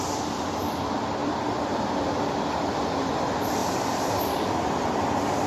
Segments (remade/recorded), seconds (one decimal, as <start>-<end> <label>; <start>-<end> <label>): 0.0-1.2 recorded; 1.2-2.0 remade; 2.0-3.6 recorded; 3.6-4.3 remade; 4.3-5.5 recorded